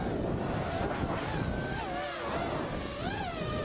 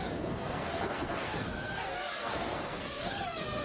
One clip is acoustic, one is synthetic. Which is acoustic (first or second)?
first